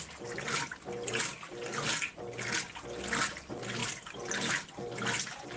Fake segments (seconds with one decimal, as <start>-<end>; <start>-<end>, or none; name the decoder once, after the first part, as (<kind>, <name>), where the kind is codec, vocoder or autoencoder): none

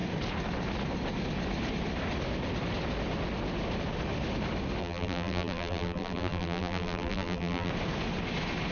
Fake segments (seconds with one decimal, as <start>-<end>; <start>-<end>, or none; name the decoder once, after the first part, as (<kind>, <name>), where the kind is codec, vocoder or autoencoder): 4.8-7.7 (vocoder, BigVGAN v2)

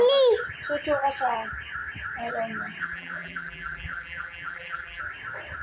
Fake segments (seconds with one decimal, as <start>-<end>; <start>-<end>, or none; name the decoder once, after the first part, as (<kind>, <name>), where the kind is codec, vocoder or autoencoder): 2.8-5.0 (vocoder, BigVGAN v2)

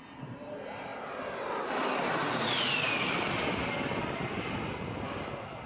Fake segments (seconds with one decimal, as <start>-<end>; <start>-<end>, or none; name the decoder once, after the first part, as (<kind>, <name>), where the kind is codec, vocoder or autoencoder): none

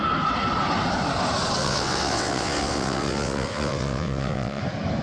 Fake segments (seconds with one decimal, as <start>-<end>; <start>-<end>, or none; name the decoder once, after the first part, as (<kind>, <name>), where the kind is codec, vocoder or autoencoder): 1.6-4.6 (vocoder, WaveNeXt)